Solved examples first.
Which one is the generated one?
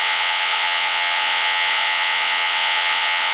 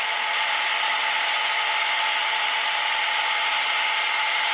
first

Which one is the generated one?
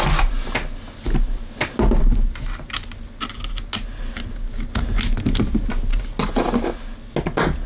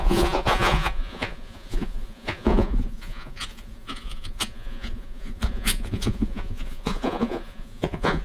second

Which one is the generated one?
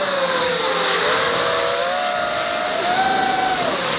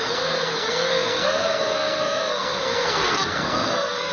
second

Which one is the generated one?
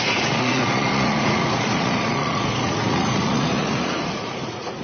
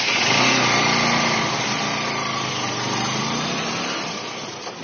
first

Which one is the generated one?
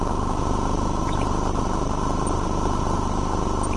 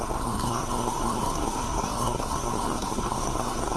second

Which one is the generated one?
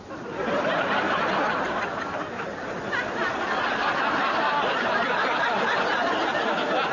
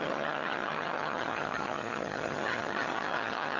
second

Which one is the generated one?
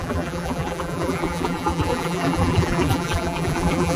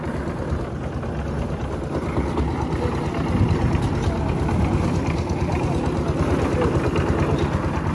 first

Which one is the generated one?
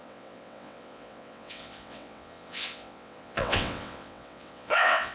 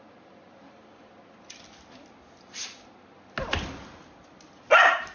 first